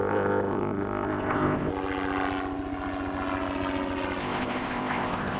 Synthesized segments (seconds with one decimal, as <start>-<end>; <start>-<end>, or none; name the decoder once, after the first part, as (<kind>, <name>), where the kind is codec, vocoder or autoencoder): 0.0-1.7 (codec, ZipCodec); 4.2-5.4